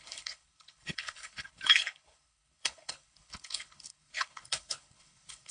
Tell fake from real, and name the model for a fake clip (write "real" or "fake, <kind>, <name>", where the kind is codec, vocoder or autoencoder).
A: fake, codec, HILCodec